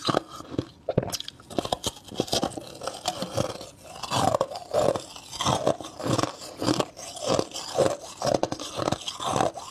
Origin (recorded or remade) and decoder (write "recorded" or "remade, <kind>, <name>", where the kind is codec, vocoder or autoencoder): recorded